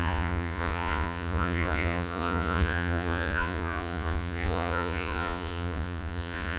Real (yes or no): no